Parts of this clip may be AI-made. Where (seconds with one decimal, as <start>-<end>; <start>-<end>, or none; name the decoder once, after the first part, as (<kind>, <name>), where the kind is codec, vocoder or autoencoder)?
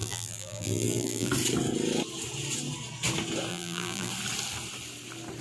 0.0-1.3 (vocoder, BigVGAN v2); 3.5-4.1